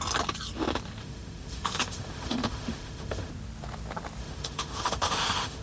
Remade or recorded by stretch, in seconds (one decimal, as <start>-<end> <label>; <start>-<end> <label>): 0.0-1.0 recorded; 1.0-3.3 remade; 3.3-4.2 recorded; 4.2-5.6 remade